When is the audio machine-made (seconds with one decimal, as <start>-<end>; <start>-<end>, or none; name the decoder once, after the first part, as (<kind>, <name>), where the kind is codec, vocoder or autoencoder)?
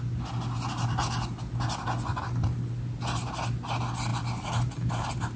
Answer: none